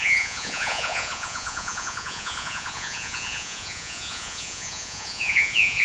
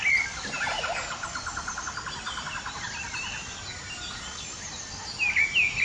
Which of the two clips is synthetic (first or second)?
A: first